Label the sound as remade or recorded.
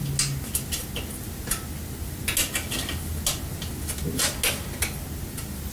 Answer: recorded